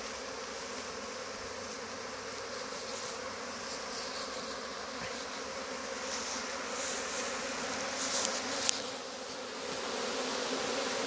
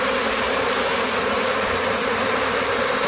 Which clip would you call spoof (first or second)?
second